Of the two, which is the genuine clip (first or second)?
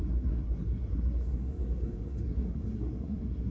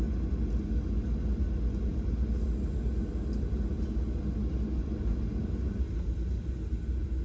second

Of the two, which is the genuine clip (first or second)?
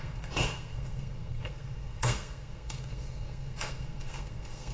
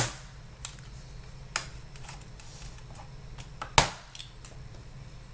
second